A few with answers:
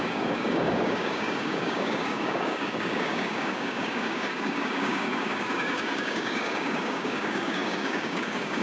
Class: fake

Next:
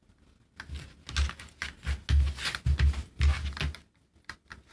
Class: real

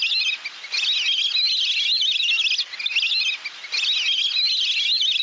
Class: real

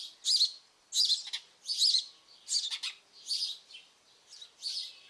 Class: real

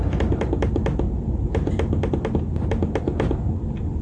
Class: real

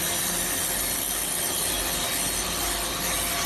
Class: real